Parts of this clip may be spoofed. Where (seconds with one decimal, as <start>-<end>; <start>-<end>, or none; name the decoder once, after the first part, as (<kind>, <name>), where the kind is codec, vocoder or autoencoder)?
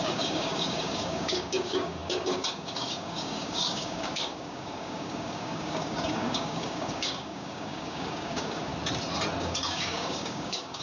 0.0-8.7 (codec, DAC); 9.4-10.8